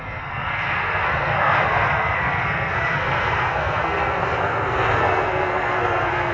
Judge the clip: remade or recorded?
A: remade